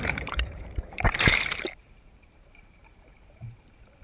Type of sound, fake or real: fake